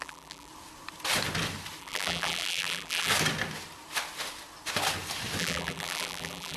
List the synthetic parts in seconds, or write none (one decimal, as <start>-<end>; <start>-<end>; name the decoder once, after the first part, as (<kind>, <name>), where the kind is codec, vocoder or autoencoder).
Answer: 0.0-0.5 (vocoder, BigVGAN v2); 1.8-3.1; 5.4-6.6